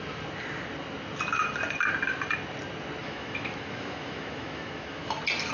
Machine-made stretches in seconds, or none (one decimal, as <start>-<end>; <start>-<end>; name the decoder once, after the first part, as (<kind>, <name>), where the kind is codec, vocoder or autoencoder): 3.0-5.0 (autoencoder, DAC-VAE)